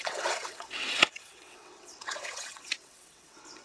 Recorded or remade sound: remade